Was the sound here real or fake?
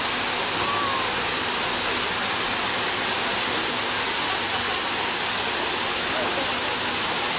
real